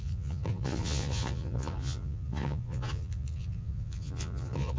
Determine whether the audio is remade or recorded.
remade